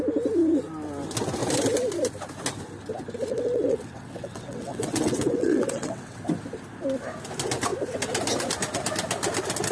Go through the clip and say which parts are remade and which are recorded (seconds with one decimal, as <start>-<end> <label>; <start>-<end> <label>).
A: 0.0-3.3 recorded; 3.3-6.2 remade; 6.2-9.7 recorded